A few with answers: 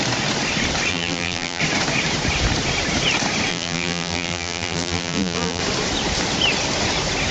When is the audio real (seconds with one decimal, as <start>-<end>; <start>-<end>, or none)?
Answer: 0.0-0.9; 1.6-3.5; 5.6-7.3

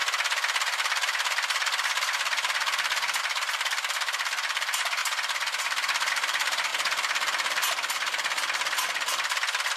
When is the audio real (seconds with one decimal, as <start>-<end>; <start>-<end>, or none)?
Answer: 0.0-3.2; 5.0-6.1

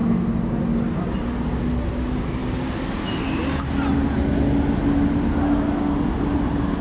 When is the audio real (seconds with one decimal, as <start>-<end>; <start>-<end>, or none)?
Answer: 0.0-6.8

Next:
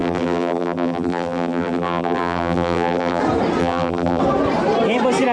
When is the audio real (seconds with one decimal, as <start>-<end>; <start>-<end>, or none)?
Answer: 3.2-3.6; 4.2-5.3

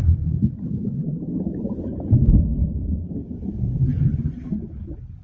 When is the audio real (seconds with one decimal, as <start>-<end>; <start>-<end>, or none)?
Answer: 3.1-3.9; 4.7-5.2

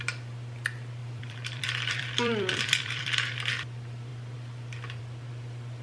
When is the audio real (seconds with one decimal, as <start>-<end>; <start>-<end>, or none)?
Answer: 0.0-1.0; 3.5-5.8